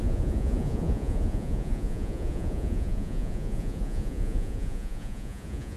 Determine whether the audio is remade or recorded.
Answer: remade